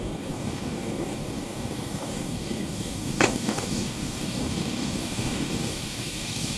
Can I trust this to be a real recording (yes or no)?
no